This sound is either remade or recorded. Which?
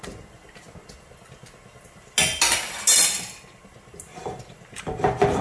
recorded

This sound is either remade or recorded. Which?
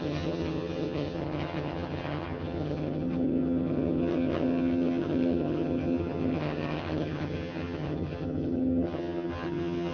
remade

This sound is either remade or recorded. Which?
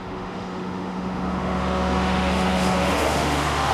remade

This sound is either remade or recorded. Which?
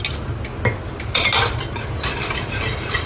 recorded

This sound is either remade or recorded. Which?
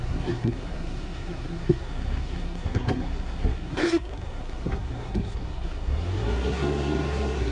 remade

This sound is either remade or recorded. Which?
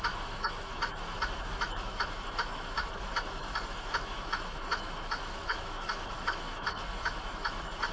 remade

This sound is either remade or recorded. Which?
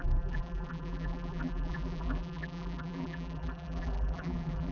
remade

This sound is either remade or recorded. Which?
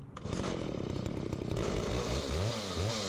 recorded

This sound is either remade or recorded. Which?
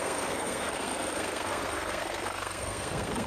remade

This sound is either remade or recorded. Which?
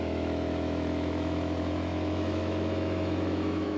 remade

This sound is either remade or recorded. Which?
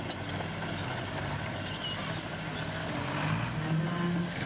recorded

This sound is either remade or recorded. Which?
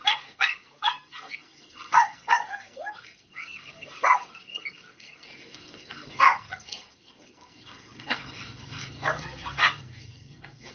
remade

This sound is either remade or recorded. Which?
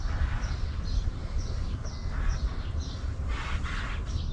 recorded